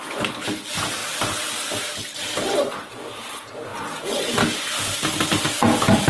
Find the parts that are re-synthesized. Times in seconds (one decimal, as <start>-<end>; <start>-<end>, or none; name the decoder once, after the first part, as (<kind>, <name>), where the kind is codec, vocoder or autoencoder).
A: none